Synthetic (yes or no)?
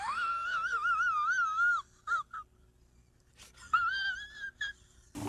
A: no